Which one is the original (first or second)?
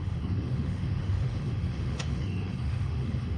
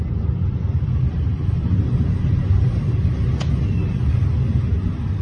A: second